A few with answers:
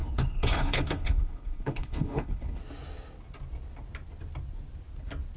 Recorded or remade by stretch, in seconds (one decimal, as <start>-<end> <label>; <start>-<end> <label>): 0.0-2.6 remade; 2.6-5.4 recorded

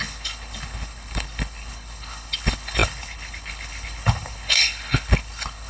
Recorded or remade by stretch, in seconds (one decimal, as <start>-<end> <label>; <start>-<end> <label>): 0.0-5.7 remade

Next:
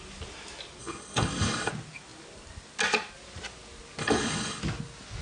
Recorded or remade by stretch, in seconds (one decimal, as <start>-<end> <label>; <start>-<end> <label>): 0.0-0.8 recorded; 0.8-1.7 remade; 1.7-4.0 recorded; 4.0-4.6 remade; 4.6-5.2 recorded

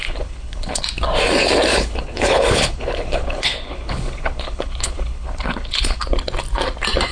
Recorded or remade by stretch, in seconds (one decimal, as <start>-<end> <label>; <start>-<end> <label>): 0.0-0.8 remade; 0.8-1.7 recorded; 1.7-6.0 remade; 6.0-7.1 recorded

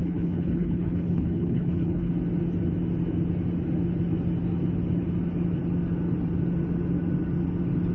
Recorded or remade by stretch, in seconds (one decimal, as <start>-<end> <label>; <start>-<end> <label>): 0.0-2.1 remade; 2.1-7.9 recorded

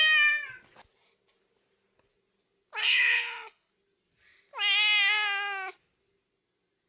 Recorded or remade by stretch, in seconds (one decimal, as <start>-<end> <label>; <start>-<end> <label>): 0.0-2.8 recorded; 2.8-3.7 remade; 3.7-6.9 recorded

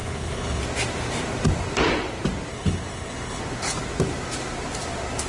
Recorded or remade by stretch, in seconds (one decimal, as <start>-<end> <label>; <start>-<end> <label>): 0.0-0.6 remade; 0.6-2.5 recorded; 2.5-3.4 remade; 3.4-5.3 recorded

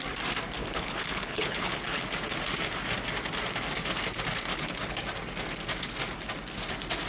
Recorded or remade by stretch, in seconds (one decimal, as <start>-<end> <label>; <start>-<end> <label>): 0.0-0.6 recorded; 0.6-2.0 remade; 2.0-4.5 recorded; 4.5-5.0 remade; 5.0-7.1 recorded